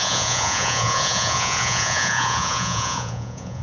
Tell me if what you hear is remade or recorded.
remade